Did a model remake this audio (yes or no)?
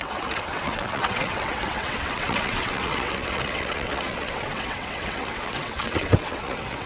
yes